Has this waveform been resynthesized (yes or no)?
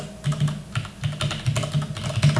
no